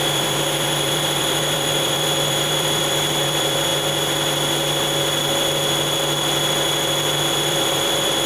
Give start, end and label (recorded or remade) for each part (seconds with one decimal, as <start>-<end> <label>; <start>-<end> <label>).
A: 0.0-3.7 remade; 3.7-7.5 recorded; 7.5-8.3 remade